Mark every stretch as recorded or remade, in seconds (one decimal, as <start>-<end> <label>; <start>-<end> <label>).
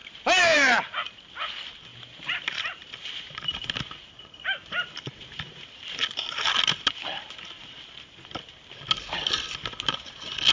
0.0-1.2 remade; 1.2-1.9 recorded; 1.9-5.7 remade; 5.7-10.5 recorded